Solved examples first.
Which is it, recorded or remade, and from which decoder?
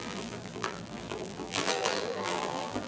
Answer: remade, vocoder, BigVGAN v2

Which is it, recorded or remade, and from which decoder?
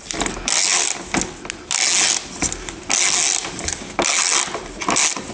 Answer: recorded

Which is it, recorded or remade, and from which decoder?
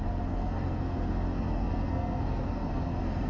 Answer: remade, codec, SNAC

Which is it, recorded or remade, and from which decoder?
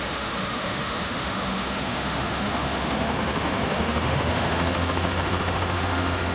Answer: remade, autoencoder, DAC-VAE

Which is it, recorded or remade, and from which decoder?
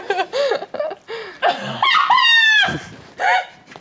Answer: recorded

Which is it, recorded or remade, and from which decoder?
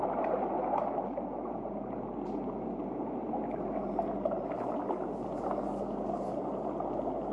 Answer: recorded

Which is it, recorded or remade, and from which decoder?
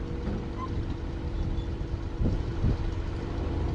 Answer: recorded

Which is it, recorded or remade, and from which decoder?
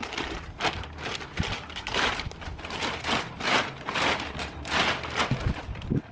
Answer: recorded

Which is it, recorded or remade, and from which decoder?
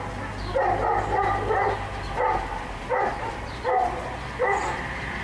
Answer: recorded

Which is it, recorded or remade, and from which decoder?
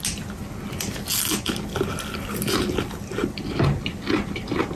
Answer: recorded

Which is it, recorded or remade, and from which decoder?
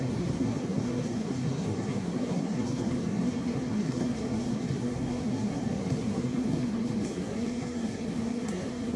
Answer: remade, codec, SNAC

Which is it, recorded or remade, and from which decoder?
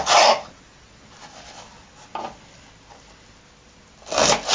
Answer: recorded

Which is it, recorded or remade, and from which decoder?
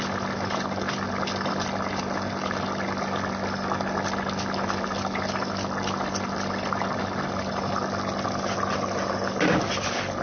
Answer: recorded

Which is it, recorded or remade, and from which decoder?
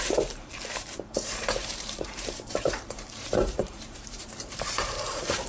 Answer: remade, vocoder, BigVGAN v2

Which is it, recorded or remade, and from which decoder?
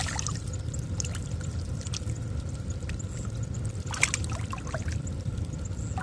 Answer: recorded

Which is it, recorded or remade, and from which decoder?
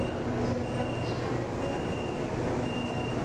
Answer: recorded